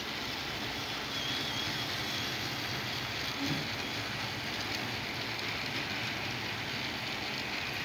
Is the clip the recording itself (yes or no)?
yes